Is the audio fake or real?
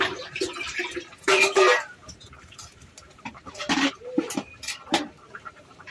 fake